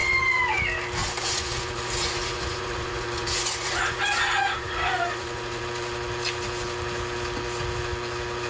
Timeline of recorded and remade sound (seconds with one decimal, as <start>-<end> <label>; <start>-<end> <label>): 0.0-0.6 remade; 0.6-1.0 recorded; 1.0-5.6 remade; 5.6-8.5 recorded